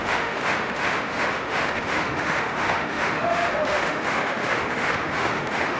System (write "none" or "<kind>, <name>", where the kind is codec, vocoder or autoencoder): autoencoder, DAC-VAE